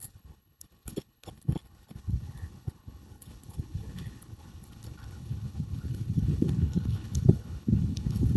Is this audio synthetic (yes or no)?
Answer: yes